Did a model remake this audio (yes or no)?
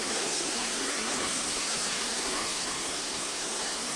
yes